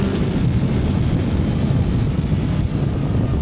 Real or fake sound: real